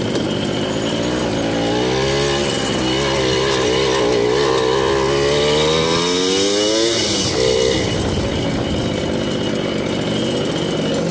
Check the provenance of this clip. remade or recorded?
recorded